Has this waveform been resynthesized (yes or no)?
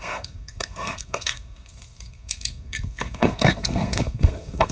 yes